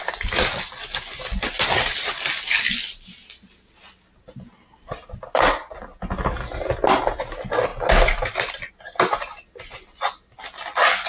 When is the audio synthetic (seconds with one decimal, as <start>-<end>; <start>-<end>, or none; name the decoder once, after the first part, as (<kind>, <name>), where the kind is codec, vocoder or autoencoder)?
none